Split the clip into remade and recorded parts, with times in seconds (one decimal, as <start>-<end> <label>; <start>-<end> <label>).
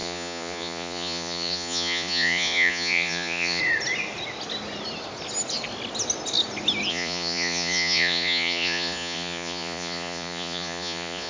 0.0-3.6 remade; 3.6-6.9 recorded; 6.9-11.3 remade